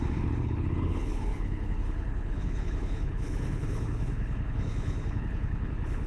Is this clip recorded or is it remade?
remade